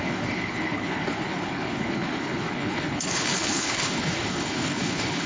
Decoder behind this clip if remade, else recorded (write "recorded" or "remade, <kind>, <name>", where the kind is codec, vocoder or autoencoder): remade, codec, HILCodec